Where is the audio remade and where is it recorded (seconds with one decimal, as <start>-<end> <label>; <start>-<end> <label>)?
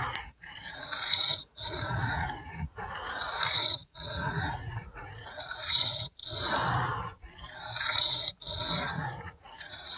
0.0-6.2 remade; 6.2-7.8 recorded; 7.8-10.0 remade